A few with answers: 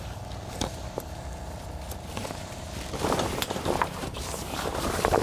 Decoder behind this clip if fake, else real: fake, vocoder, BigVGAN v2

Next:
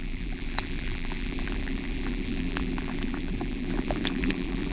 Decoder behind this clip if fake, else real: fake, vocoder, BigVGAN v2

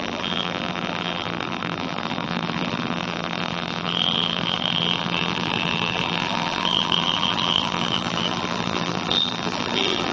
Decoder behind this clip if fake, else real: fake, vocoder, BigVGAN v2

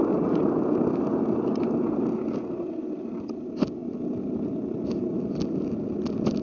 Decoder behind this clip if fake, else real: real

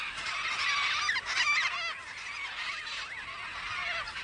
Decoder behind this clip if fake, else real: real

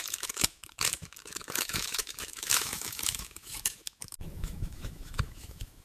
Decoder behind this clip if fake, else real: fake, autoencoder, DAC-VAE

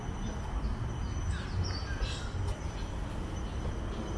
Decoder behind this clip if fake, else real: real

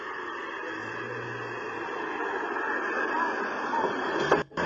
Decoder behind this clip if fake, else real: real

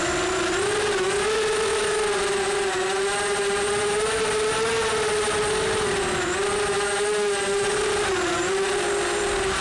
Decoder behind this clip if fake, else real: real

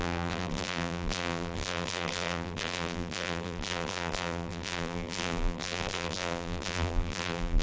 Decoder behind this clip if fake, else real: fake, vocoder, BigVGAN v2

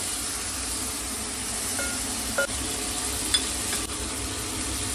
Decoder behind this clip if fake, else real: real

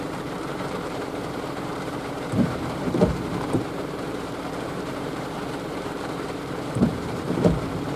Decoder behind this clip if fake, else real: fake, vocoder, BigVGAN v2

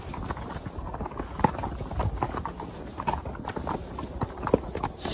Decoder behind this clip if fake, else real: real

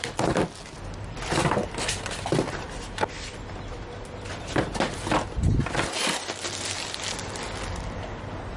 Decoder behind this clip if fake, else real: real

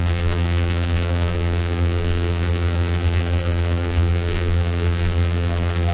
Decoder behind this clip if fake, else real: fake, vocoder, BigVGAN v2